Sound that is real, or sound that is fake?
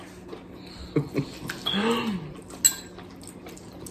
real